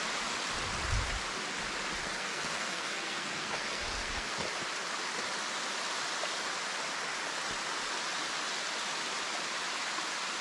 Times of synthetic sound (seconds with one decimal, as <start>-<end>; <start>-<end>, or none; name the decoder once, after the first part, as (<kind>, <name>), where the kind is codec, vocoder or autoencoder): 2.0-4.4 (codec, SNAC)